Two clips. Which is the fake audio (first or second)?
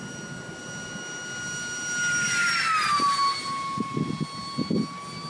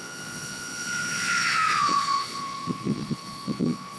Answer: second